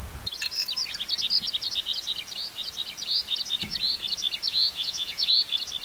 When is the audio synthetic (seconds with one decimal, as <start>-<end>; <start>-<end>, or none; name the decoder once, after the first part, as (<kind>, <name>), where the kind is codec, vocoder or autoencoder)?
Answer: 4.5-5.3 (vocoder, Vocos)